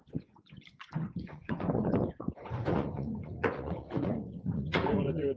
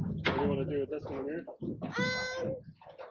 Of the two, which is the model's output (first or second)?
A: first